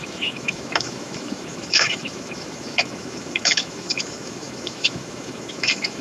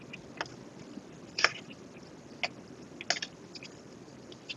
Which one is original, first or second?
second